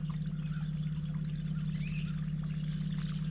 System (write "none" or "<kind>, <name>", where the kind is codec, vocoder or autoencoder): none